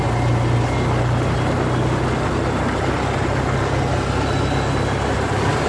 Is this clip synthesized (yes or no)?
no